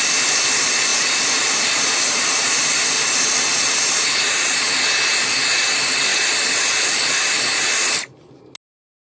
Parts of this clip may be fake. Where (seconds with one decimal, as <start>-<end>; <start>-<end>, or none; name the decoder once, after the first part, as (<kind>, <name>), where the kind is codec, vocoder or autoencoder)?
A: 0.9-4.7 (vocoder, BigVGAN v2); 6.1-7.1